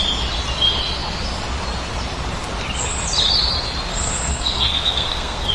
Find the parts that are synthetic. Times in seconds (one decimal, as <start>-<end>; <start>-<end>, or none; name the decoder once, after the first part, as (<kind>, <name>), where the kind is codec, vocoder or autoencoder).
3.9-5.5 (codec, SNAC)